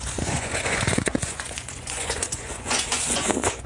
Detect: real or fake fake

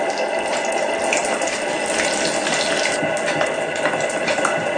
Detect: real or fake real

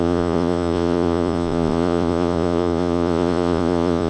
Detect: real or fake fake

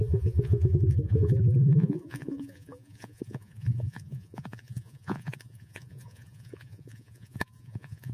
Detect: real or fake fake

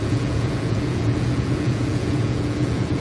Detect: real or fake fake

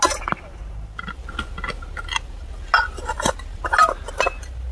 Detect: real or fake real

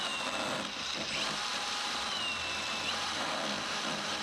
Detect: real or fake real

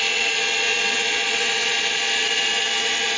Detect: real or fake fake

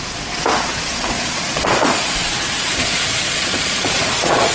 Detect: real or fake fake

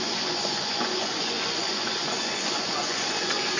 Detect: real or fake fake